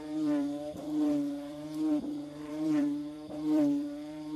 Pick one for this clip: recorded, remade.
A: remade